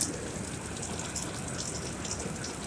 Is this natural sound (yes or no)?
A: yes